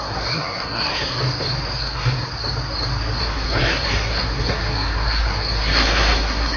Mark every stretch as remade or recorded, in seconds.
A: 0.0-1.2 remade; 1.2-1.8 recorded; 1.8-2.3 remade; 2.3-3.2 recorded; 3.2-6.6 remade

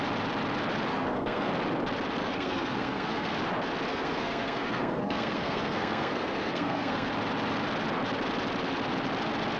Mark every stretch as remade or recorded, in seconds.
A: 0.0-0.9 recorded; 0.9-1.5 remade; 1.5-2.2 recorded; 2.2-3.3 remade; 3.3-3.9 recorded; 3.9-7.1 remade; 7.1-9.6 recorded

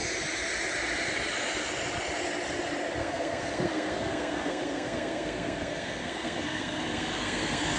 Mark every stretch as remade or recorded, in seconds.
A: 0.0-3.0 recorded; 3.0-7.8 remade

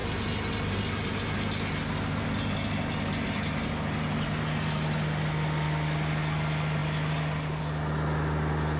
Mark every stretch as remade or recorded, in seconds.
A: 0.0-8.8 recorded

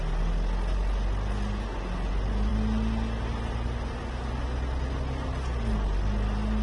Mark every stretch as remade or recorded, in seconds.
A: 0.0-6.6 recorded

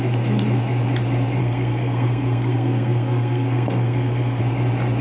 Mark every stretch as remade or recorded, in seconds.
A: 0.0-1.4 recorded; 1.4-4.4 remade; 4.4-5.0 recorded

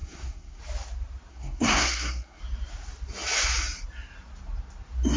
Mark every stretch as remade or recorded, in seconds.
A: 0.0-0.6 remade; 0.6-1.3 recorded; 1.3-2.4 remade; 2.4-5.2 recorded